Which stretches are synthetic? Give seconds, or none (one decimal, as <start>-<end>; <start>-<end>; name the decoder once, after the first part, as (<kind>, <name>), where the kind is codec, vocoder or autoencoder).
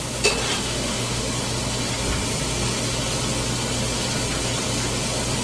0.6-1.2 (autoencoder, DAC-VAE)